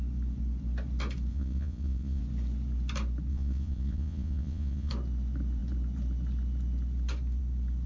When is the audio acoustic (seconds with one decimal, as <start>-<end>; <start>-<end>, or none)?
0.0-1.3; 2.2-3.3; 4.9-7.9